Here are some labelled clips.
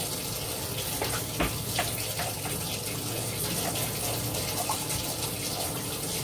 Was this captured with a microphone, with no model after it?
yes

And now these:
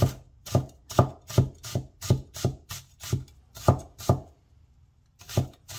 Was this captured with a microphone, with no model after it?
yes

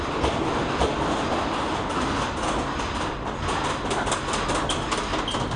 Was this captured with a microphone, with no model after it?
yes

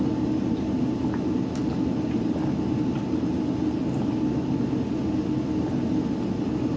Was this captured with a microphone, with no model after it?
yes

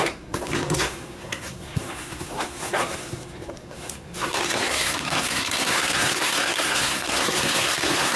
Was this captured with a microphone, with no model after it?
no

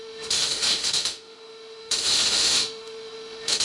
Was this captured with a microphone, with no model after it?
no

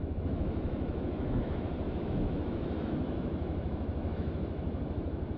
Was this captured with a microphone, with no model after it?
no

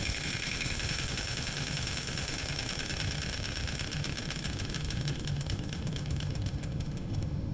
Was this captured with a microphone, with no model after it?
no